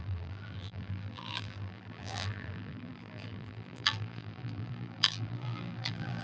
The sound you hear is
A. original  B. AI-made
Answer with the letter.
B